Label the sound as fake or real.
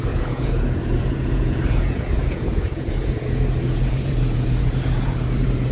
fake